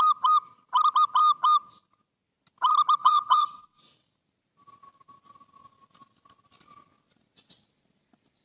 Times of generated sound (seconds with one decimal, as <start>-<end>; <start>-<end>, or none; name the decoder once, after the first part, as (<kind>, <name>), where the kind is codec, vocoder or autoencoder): 3.0-3.8 (vocoder, WaveNeXt)